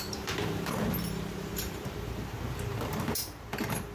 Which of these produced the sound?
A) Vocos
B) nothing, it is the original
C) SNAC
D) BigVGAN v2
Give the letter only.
D